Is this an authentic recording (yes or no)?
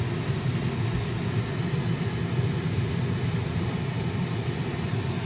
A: yes